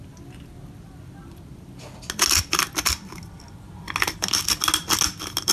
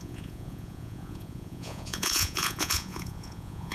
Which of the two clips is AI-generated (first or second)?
second